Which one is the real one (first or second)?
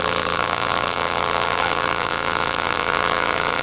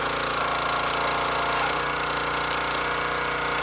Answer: second